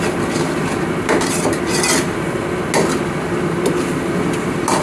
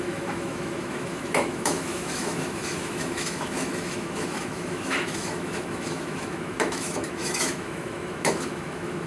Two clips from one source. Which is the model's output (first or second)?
second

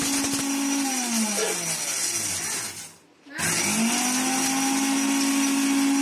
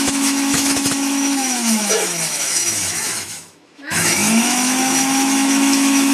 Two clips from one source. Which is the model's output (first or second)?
second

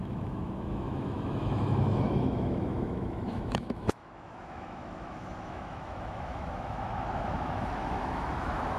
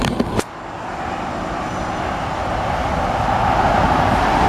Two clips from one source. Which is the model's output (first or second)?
first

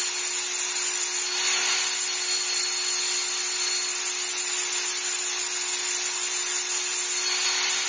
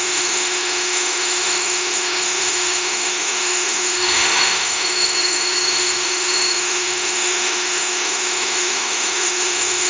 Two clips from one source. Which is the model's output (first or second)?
second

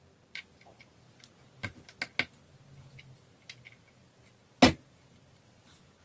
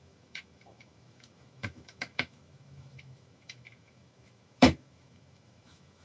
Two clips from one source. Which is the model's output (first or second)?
second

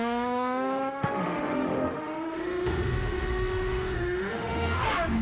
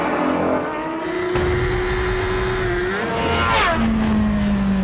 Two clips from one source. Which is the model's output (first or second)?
first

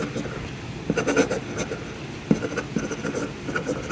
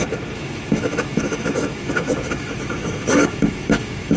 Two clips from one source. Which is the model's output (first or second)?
second